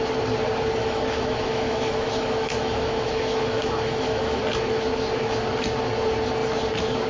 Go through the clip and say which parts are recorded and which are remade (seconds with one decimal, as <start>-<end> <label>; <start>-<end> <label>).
0.0-0.8 recorded; 0.8-4.4 remade; 4.4-7.1 recorded